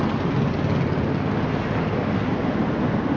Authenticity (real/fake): real